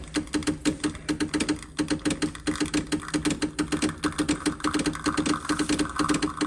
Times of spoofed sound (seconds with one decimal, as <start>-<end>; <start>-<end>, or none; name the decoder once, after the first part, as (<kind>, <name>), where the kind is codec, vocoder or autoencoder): none